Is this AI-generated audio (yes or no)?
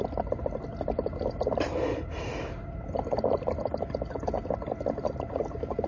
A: no